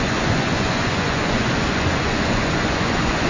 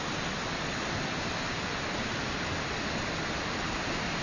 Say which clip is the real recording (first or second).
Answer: second